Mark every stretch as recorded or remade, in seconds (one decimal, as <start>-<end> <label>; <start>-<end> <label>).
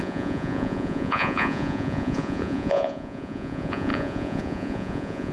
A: 0.0-5.3 remade